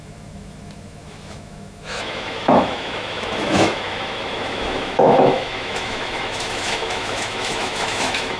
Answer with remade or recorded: remade